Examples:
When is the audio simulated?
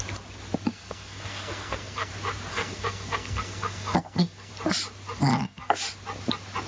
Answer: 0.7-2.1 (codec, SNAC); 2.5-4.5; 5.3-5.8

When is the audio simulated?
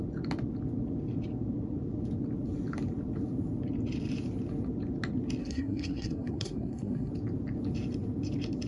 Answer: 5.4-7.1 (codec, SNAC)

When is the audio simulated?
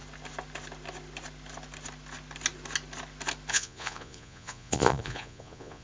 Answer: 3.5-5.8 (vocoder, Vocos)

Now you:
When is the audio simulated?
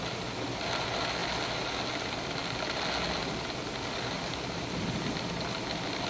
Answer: none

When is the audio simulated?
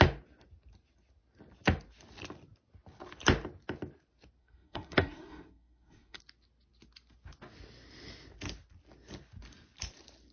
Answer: 4.4-6.2 (codec, SNAC)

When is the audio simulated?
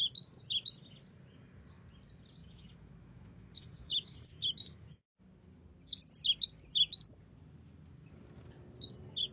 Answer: 2.4-5.2 (autoencoder, DAC-VAE)